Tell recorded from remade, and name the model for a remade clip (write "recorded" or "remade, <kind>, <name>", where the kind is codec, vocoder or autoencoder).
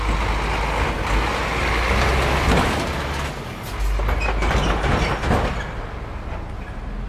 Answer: recorded